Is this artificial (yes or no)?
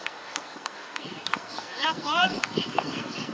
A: yes